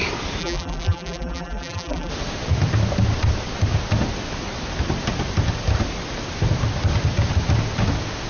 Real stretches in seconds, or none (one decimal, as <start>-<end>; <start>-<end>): 0.0-0.4; 2.1-8.3